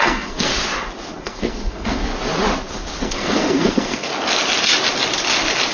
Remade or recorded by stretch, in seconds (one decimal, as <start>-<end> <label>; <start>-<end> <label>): 0.0-0.5 remade; 0.5-1.2 recorded; 1.2-2.1 remade; 2.1-3.0 recorded; 3.0-4.1 remade; 4.1-5.7 recorded